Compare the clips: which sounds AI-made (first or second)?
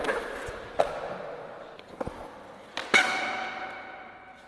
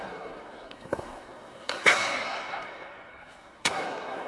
second